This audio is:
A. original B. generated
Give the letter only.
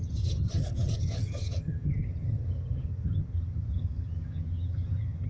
B